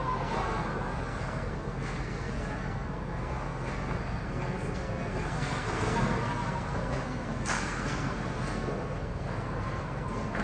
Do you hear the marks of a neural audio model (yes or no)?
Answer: yes